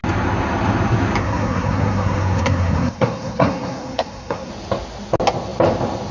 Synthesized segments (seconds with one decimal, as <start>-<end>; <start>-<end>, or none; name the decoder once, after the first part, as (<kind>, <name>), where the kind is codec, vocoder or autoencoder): 1.2-4.5 (codec, SNAC)

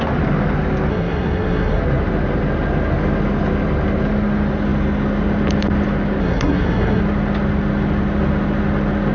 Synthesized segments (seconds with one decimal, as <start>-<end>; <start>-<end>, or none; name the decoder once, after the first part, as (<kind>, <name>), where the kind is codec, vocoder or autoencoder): 0.9-1.8 (codec, SNAC); 6.2-7.0

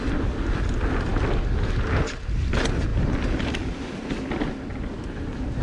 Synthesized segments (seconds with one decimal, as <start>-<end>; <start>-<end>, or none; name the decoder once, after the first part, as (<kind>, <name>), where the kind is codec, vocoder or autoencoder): none

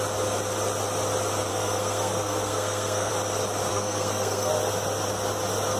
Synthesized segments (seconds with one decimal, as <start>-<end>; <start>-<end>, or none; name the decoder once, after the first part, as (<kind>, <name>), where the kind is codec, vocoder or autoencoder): 1.5-3.1 (codec, SNAC); 3.7-4.5